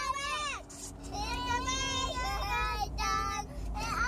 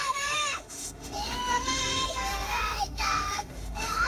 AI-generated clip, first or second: second